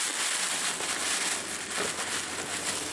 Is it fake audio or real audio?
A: real